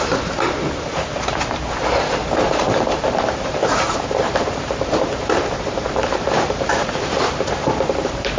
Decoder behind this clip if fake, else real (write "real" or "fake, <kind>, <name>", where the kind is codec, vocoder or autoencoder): fake, vocoder, BigVGAN v2